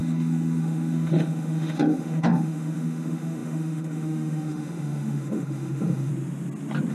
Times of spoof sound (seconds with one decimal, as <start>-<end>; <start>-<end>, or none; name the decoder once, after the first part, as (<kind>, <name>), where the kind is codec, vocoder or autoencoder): 0.0-6.1 (autoencoder, DAC-VAE)